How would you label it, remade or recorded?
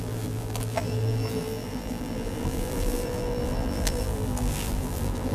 remade